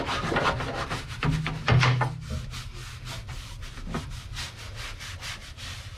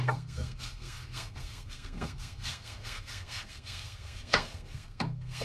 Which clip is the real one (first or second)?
first